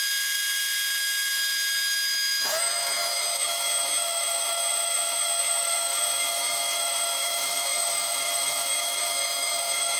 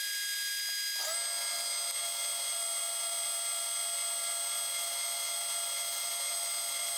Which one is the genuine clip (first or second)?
second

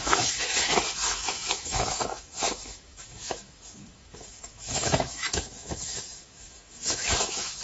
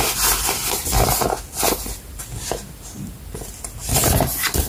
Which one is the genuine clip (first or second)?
second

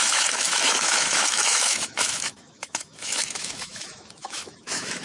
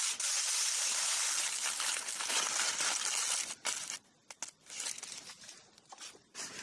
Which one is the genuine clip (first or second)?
second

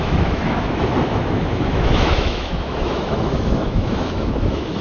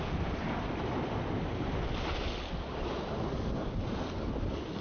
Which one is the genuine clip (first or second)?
second